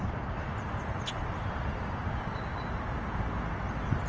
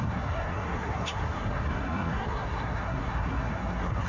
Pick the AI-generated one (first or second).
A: second